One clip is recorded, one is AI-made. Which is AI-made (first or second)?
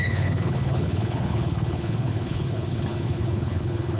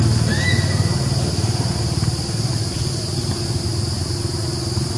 first